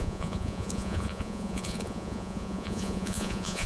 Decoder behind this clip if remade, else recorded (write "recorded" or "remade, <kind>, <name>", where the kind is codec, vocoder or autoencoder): remade, vocoder, Vocos